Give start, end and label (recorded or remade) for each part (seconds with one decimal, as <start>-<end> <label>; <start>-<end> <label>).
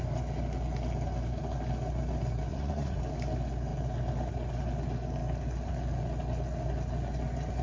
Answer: 0.0-2.5 recorded; 2.5-3.0 remade; 3.0-7.6 recorded